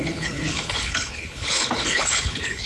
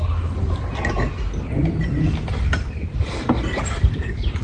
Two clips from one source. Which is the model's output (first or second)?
first